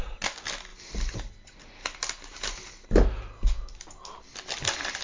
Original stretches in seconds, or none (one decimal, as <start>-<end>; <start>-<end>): 0.0-5.0